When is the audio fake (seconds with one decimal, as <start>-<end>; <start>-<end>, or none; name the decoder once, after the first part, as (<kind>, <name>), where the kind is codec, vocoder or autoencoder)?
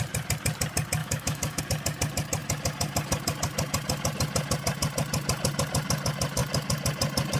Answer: 1.0-1.6 (autoencoder, DAC-VAE)